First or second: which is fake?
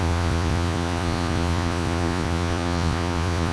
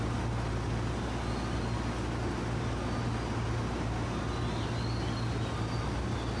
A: first